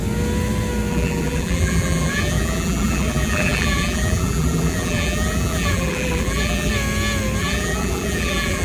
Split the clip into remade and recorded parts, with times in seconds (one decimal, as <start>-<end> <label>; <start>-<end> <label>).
0.0-0.9 recorded; 0.9-6.7 remade; 6.7-7.4 recorded; 7.4-8.6 remade